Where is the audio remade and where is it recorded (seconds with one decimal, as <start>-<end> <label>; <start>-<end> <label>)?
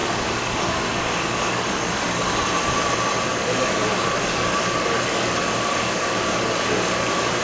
0.0-2.3 remade; 2.3-3.3 recorded; 3.3-7.4 remade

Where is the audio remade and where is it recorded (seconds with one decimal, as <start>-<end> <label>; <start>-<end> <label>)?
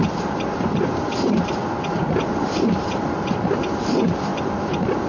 0.0-5.1 remade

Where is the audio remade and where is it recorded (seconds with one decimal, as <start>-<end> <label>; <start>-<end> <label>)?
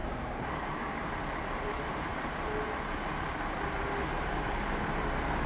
0.0-1.1 remade; 1.1-5.5 recorded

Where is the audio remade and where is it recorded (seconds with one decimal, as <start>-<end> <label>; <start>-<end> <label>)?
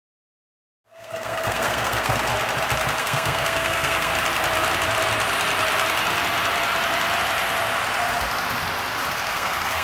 0.0-2.3 remade; 2.3-3.0 recorded; 3.0-4.1 remade; 4.1-9.1 recorded; 9.1-9.8 remade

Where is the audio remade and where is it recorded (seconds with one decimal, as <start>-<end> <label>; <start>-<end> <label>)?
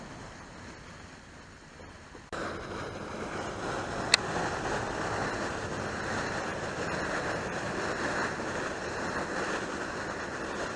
0.0-10.8 recorded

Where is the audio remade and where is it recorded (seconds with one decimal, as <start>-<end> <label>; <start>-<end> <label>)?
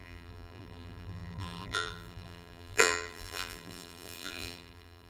0.0-5.1 remade